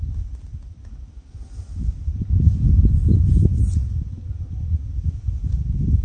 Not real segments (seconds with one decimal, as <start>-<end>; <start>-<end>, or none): none